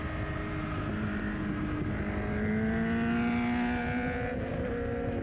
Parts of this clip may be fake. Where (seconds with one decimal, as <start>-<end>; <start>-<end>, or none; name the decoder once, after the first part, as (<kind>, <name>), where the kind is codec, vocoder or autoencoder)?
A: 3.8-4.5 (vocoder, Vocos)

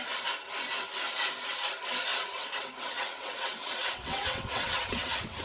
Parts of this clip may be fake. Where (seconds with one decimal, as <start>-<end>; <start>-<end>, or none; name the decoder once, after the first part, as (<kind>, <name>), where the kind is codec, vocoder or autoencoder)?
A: 2.1-5.4 (vocoder, WaveNeXt)

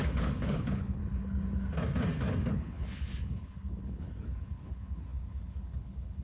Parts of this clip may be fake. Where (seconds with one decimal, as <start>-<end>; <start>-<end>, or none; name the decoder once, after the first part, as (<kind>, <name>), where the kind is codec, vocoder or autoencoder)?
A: 0.0-1.0 (codec, HILCodec); 2.5-6.2

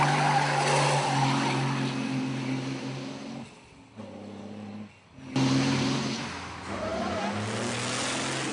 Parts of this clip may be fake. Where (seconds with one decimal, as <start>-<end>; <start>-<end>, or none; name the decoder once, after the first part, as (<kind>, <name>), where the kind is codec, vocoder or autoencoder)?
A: none

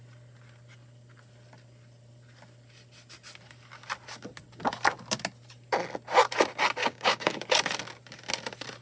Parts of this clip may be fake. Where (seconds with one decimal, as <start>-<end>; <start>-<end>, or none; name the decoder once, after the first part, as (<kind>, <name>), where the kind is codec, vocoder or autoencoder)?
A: 6.8-7.4 (codec, DAC)

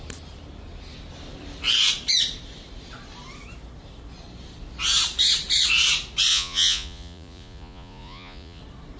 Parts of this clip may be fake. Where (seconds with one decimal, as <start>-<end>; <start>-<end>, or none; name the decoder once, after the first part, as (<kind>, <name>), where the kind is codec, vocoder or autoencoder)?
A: 6.3-8.6 (vocoder, Vocos)

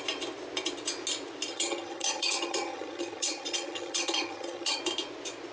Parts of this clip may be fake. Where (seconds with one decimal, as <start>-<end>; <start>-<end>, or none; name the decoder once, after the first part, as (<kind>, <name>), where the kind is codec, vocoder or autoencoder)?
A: 1.5-4.8 (vocoder, HiFi-GAN)

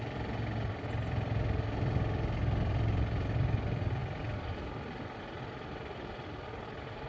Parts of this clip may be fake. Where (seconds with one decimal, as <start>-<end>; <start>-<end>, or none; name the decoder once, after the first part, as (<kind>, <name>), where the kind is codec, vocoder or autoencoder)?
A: none